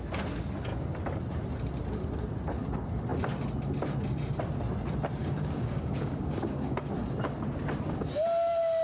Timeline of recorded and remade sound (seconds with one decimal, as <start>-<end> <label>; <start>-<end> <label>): 0.0-5.2 recorded; 5.2-6.9 remade; 6.9-8.8 recorded